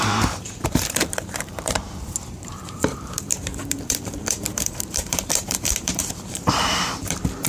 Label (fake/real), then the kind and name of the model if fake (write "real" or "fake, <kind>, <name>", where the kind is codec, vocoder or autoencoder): fake, vocoder, BigVGAN v2